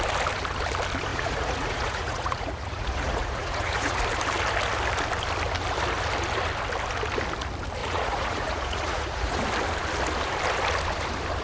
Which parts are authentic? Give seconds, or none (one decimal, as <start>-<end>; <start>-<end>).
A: 0.0-1.1; 4.0-7.8; 9.4-11.4